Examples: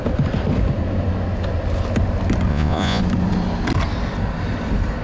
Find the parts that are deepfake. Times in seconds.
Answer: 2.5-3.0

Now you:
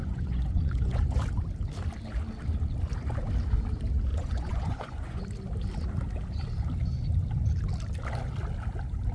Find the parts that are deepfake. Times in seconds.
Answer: 0.0-1.2; 4.1-5.2

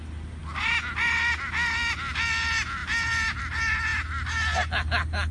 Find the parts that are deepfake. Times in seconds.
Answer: none